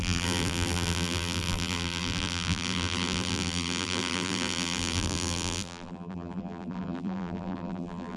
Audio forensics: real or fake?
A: fake